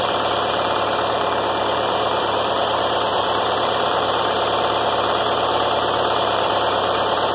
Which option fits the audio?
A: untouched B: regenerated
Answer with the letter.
B